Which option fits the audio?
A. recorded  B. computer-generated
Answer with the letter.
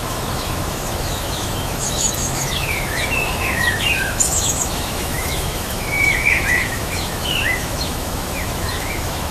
B